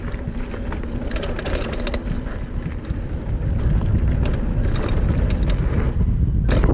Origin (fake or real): real